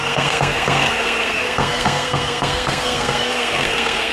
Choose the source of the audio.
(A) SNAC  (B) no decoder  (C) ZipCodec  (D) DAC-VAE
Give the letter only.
A